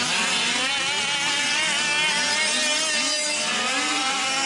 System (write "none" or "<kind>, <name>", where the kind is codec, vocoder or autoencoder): none